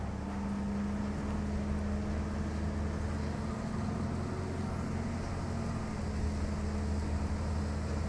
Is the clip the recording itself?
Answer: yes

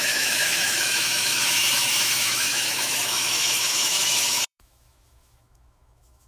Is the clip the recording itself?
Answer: no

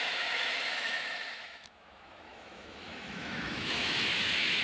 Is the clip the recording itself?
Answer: no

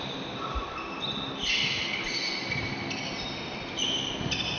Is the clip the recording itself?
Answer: yes